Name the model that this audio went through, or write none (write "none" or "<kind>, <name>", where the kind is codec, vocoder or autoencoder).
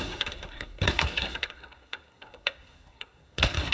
codec, SNAC